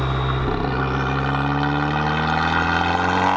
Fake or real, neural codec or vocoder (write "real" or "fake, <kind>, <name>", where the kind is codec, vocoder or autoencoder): real